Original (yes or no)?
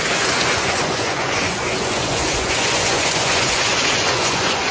no